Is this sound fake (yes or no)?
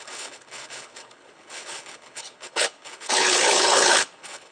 yes